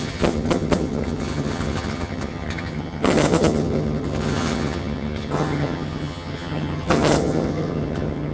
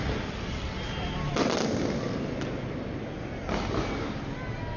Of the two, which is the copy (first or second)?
first